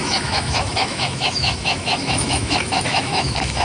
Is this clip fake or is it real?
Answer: fake